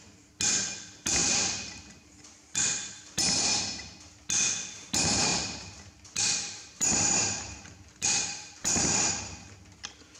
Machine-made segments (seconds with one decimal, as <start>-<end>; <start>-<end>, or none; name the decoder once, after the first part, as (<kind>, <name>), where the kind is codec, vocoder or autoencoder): 1.2-3.4 (vocoder, BigVGAN v2); 5.3-9.1